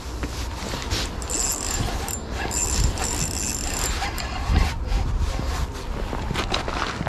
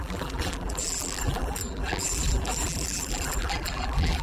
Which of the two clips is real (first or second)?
first